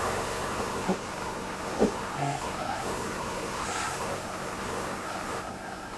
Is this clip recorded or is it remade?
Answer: remade